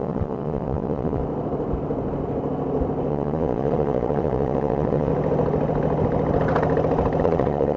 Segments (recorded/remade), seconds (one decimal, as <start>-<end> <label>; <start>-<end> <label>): 0.0-1.2 remade; 1.2-3.1 recorded; 3.1-5.1 remade; 5.1-7.2 recorded; 7.2-7.8 remade